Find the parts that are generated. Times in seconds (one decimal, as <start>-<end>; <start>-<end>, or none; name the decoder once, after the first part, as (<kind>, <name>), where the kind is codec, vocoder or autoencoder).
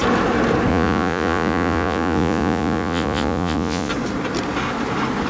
0.7-3.9 (vocoder, Vocos)